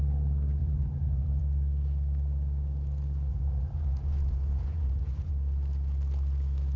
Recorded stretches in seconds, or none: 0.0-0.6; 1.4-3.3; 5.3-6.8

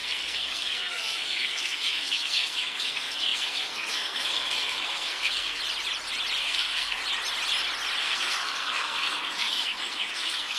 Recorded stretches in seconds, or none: 5.6-6.4; 7.0-8.0

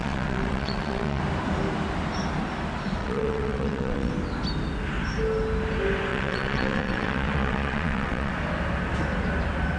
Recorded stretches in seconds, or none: 1.2-3.0; 4.1-6.1; 8.3-9.8

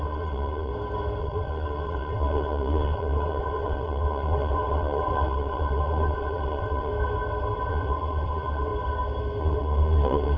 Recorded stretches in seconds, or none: 0.7-1.2; 6.9-7.7; 8.7-9.4

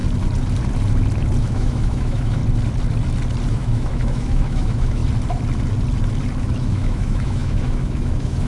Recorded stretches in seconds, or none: 0.0-1.4; 2.4-3.5; 5.0-6.4

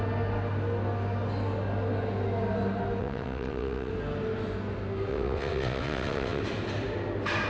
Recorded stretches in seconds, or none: 0.0-3.0; 3.9-5.1; 6.4-7.5